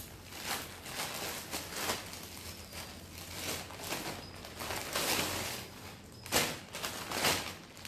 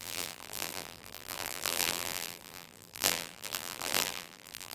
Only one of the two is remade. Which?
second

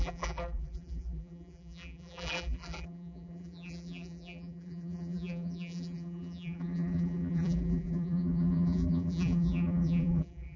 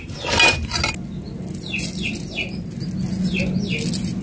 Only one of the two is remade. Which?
first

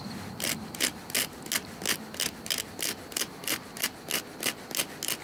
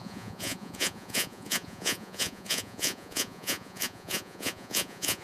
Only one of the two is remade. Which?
second